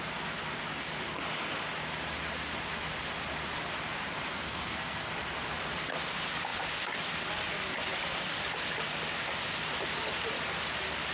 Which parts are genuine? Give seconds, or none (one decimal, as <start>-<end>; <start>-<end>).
0.0-4.3; 5.1-11.1